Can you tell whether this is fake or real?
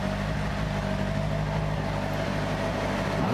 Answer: real